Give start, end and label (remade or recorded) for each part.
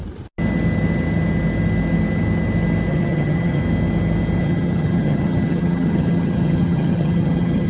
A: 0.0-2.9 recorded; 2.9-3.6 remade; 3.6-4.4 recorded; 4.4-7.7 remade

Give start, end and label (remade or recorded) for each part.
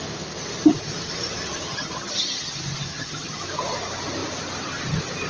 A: 0.0-1.7 recorded; 1.7-2.5 remade; 2.5-2.9 recorded; 2.9-3.4 remade; 3.4-5.3 recorded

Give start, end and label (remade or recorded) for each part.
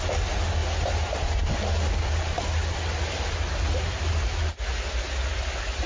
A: 0.0-5.9 recorded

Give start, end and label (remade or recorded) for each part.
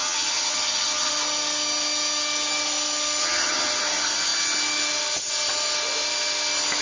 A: 0.0-1.1 remade; 1.1-3.2 recorded; 3.2-3.8 remade; 3.8-6.8 recorded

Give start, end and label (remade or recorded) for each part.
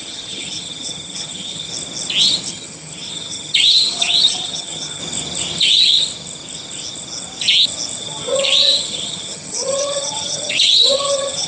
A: 0.0-1.7 remade; 1.7-2.5 recorded; 2.5-5.0 remade; 5.0-5.6 recorded; 5.6-6.0 remade; 6.0-8.0 recorded; 8.0-11.5 remade